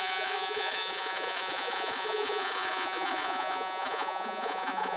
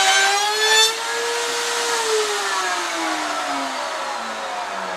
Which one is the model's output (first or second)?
first